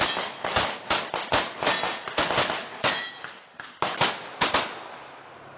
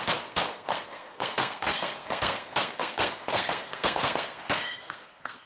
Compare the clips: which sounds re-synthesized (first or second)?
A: second